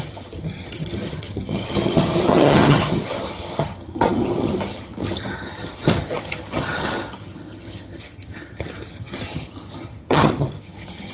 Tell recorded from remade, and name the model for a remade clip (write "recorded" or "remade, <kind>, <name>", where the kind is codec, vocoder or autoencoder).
remade, vocoder, HiFi-GAN